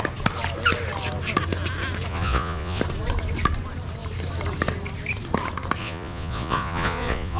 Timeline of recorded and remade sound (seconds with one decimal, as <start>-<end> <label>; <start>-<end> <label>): 0.0-2.1 recorded; 2.1-2.8 remade; 2.8-5.8 recorded; 5.8-7.4 remade